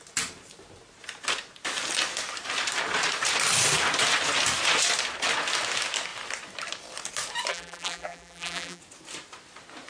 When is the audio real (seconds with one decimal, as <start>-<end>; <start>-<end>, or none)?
0.0-7.5; 8.8-9.9